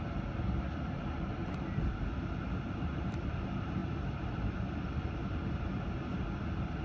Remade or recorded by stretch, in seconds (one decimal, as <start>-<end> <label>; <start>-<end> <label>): 0.0-6.8 recorded